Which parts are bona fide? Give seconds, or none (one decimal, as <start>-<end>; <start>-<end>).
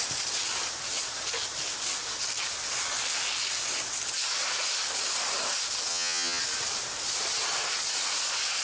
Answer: 0.0-5.9; 6.4-8.6